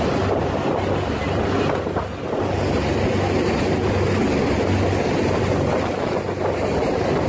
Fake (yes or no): no